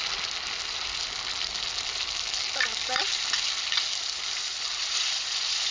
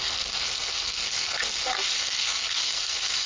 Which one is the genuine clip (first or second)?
first